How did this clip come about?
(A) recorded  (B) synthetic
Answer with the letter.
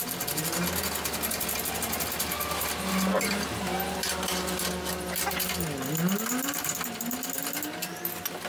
A